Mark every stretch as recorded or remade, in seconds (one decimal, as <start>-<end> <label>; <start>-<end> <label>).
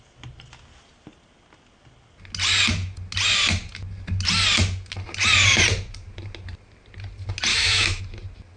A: 0.0-7.5 recorded; 7.5-8.0 remade; 8.0-8.6 recorded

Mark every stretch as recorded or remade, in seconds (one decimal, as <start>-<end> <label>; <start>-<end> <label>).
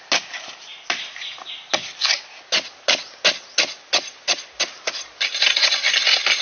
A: 0.0-6.4 recorded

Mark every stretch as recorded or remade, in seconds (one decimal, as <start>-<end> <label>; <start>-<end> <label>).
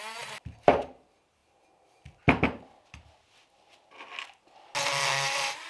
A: 0.0-5.7 recorded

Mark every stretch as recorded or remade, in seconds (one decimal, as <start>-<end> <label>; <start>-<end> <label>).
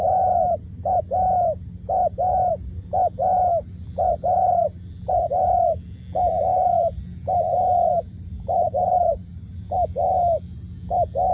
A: 0.0-6.5 recorded; 6.5-7.0 remade; 7.0-7.9 recorded; 7.9-9.7 remade; 9.7-11.3 recorded